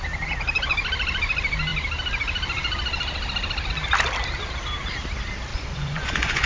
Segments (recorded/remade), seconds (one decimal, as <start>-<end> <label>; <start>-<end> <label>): 0.0-5.5 recorded; 5.5-6.5 remade